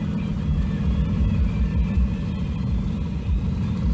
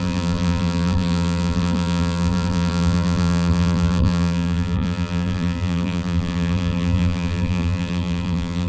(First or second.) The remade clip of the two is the second